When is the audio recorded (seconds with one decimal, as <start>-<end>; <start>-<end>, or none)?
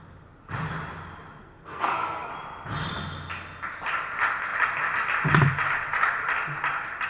0.0-1.4; 2.3-7.1